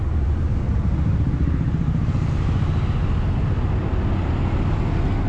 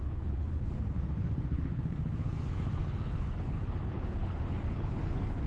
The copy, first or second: second